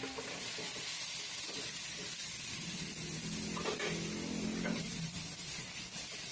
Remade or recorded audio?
recorded